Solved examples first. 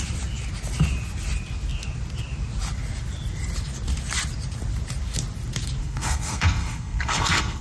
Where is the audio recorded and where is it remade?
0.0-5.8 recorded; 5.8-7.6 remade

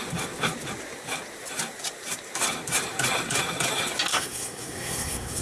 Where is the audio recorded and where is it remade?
0.0-4.1 recorded; 4.1-5.4 remade